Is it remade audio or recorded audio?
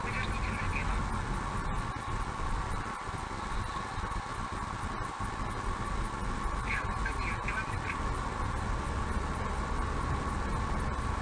recorded